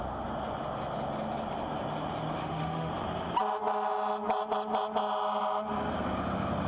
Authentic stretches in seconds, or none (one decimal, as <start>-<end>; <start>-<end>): 0.0-2.4; 2.9-6.7